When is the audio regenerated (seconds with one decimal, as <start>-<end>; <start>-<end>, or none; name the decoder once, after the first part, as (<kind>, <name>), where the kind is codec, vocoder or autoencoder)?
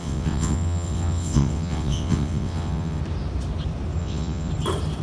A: 0.0-3.0 (vocoder, WaveNeXt); 4.0-4.5